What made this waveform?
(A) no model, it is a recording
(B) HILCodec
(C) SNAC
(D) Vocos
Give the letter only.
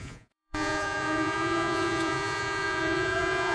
D